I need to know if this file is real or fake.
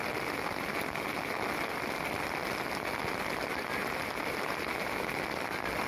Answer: real